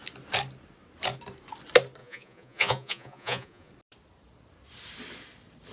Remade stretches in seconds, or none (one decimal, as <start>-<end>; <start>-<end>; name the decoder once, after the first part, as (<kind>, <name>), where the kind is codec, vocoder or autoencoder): 2.0-3.7 (vocoder, Vocos)